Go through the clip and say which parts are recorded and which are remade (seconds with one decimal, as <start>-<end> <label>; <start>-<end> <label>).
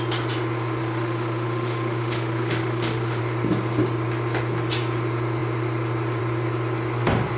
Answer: 0.0-0.8 recorded; 0.8-3.2 remade; 3.2-7.4 recorded